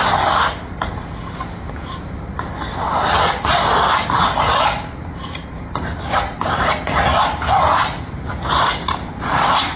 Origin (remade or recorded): recorded